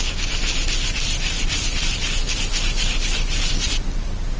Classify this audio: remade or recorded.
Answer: recorded